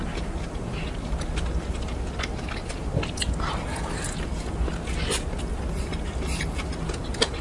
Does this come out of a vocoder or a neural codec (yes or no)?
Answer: no